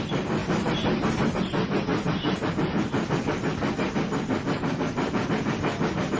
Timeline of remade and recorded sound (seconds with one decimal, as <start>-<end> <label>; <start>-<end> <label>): 0.0-6.2 recorded